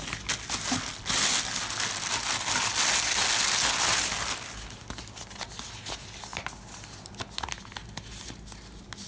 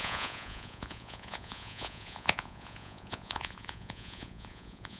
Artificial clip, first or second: second